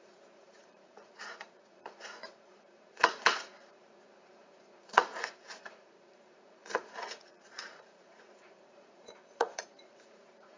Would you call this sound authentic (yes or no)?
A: no